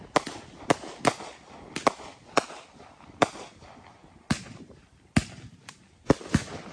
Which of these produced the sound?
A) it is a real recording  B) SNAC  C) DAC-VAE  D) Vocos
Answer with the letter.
A